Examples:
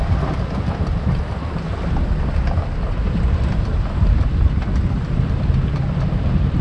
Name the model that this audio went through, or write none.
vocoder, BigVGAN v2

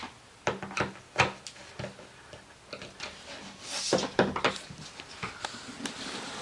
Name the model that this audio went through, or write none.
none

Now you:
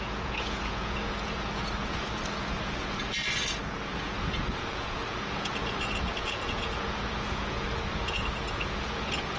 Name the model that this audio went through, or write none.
vocoder, Vocos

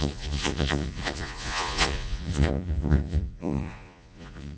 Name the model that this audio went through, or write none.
vocoder, Vocos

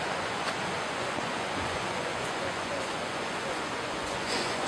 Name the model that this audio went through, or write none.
vocoder, Vocos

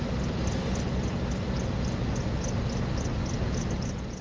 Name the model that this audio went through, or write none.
none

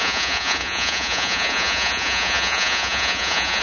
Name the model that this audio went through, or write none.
vocoder, Vocos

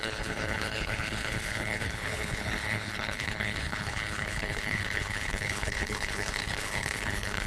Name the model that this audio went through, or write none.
codec, HILCodec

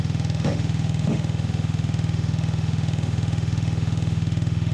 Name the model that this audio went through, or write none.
autoencoder, DAC-VAE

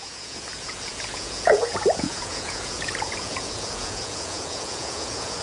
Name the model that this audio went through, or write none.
vocoder, Vocos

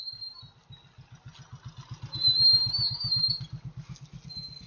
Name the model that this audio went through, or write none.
none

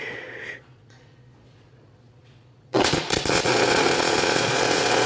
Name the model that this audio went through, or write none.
vocoder, Vocos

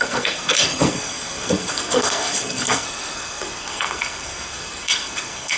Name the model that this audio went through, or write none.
codec, SNAC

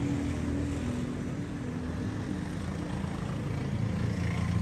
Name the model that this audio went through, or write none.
none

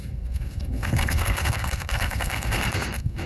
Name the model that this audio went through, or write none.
codec, SNAC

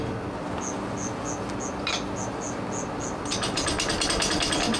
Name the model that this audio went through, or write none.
none